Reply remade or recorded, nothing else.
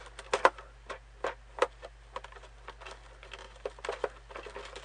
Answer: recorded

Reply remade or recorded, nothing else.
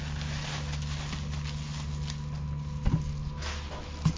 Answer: recorded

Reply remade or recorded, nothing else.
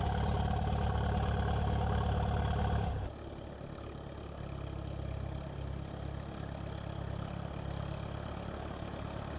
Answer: recorded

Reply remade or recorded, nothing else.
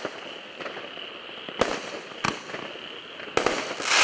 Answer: recorded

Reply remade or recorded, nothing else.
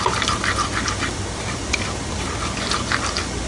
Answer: recorded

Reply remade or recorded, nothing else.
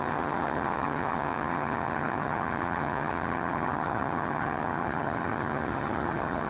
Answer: remade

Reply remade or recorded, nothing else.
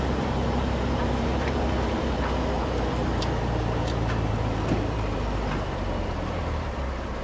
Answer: remade